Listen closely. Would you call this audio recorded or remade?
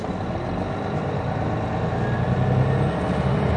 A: recorded